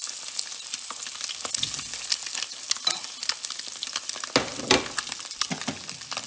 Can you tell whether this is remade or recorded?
recorded